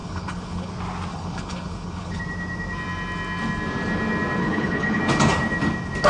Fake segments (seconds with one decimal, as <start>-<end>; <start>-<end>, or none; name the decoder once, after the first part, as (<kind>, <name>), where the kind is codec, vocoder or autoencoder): 0.0-0.7 (codec, HILCodec); 1.1-2.2; 4.4-5.0